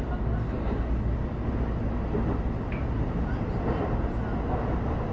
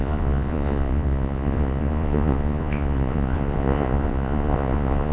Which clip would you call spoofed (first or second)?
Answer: second